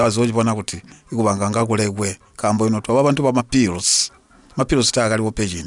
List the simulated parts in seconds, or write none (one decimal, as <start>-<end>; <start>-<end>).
none